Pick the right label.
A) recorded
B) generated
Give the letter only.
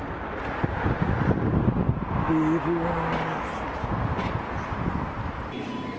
A